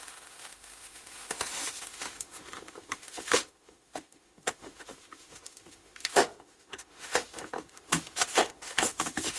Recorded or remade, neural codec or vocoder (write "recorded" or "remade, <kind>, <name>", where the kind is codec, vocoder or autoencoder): remade, autoencoder, DAC-VAE